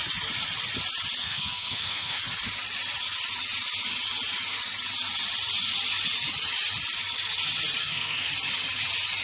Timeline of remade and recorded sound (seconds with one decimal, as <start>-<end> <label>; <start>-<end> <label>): 0.0-1.2 recorded; 1.2-2.2 remade; 2.2-7.8 recorded; 7.8-8.3 remade; 8.3-9.2 recorded